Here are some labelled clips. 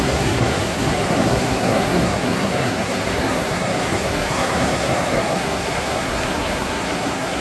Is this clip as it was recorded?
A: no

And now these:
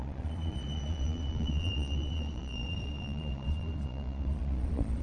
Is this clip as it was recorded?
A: no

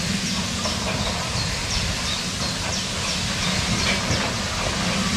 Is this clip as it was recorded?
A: yes